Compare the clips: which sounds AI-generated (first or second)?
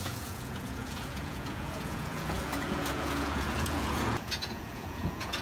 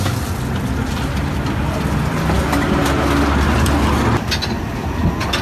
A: first